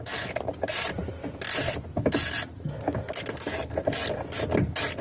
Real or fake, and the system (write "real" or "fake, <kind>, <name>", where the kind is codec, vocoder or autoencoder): real